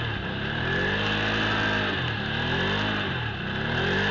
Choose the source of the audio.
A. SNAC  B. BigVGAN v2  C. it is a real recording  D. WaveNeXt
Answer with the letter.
C